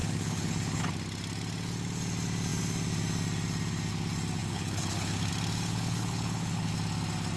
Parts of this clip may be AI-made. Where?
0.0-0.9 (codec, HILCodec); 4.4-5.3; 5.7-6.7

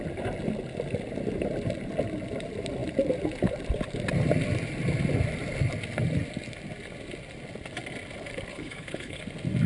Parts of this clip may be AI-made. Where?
8.5-9.2 (codec, HILCodec)

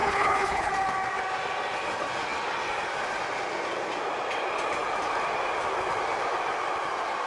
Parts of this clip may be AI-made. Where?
0.0-0.7 (codec, HILCodec)

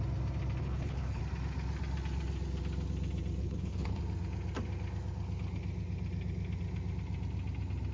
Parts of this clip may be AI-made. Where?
0.6-1.2 (codec, HILCodec); 3.4-4.0

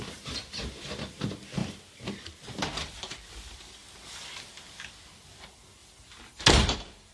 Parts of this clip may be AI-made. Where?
none

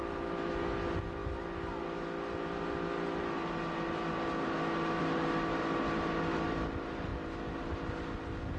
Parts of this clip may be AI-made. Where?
none

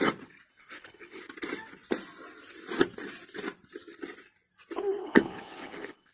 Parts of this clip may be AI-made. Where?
0.5-1.2 (codec, HILCodec); 5.0-6.1

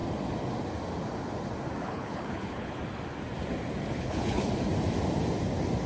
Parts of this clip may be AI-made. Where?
1.8-2.8 (codec, HILCodec); 3.9-4.5